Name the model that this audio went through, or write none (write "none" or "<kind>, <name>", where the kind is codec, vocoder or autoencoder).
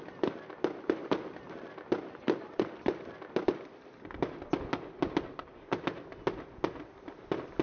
none